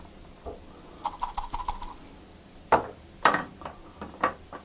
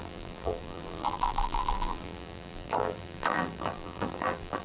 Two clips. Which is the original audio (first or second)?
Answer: first